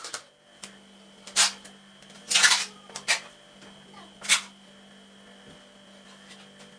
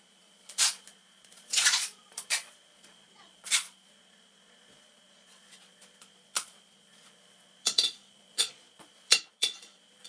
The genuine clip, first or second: first